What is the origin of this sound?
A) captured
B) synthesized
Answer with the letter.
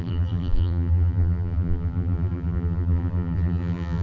B